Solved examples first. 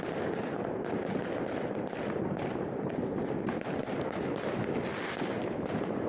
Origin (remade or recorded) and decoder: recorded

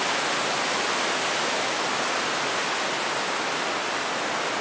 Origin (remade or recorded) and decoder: recorded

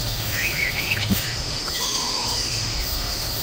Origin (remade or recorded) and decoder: remade, autoencoder, DAC-VAE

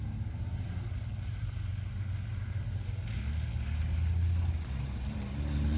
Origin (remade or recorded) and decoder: recorded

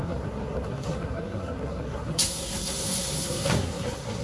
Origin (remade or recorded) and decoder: remade, codec, SNAC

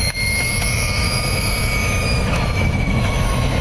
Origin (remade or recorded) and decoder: remade, autoencoder, DAC-VAE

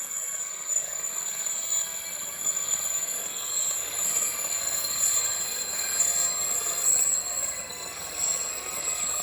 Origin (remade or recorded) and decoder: remade, codec, SNAC